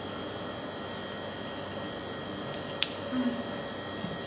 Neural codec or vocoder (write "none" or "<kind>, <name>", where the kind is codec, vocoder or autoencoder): none